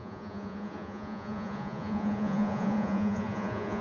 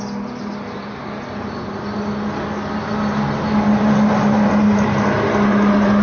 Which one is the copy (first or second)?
first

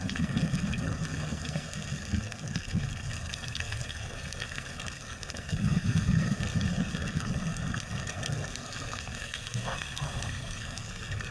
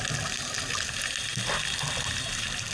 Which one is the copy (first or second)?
first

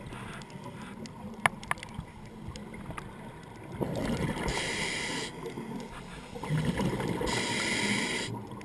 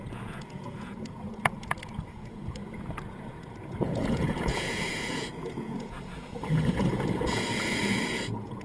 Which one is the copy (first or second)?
second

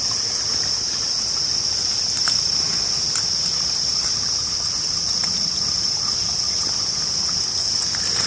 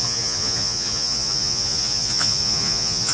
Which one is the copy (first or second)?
second